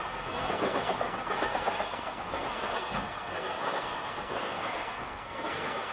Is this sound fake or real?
fake